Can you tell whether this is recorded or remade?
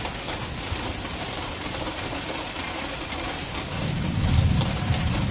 recorded